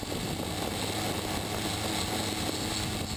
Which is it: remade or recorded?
recorded